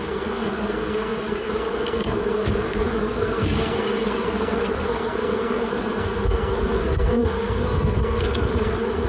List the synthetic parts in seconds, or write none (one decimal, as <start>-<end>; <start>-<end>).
0.0-9.1

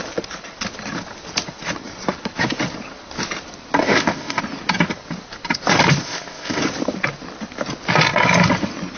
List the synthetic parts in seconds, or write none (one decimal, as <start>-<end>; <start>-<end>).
3.8-4.4; 6.0-6.6

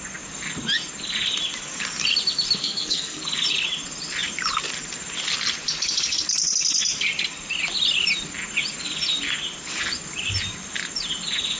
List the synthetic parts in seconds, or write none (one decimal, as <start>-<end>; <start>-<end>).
2.6-3.2

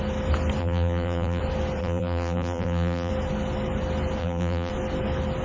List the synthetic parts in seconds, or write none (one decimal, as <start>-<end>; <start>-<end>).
0.6-1.4; 1.8-3.1; 4.2-4.7

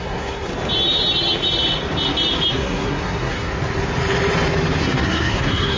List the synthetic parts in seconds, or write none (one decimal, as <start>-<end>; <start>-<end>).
0.0-0.5; 2.5-3.5; 4.8-5.8

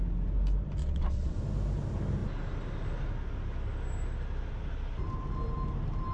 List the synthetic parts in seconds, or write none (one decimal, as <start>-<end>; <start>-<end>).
0.8-1.4

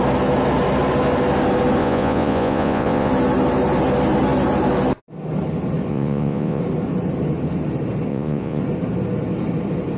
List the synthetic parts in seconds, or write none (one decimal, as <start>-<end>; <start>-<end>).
1.8-3.1; 5.9-6.6; 8.1-8.6